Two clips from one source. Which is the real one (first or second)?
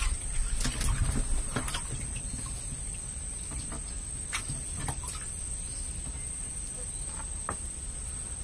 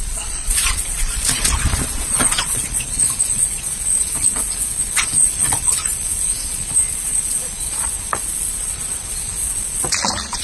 first